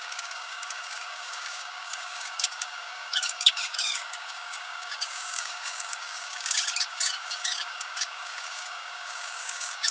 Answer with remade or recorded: remade